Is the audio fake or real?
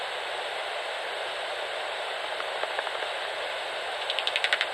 real